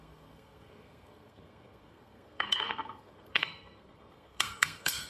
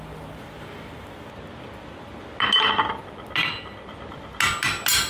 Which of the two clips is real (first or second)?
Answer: second